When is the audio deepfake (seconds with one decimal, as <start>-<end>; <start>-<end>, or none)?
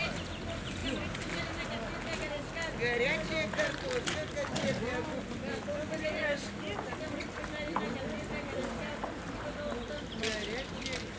none